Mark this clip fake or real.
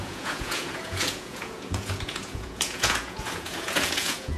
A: fake